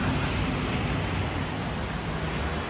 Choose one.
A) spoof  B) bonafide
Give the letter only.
B